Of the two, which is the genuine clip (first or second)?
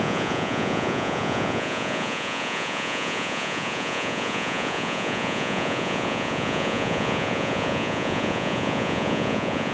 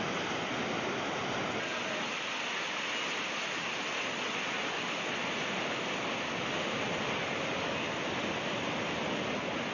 second